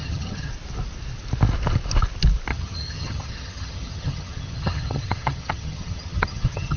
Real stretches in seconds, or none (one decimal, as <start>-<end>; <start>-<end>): 0.5-2.5